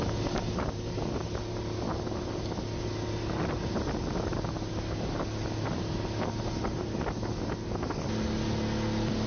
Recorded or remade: recorded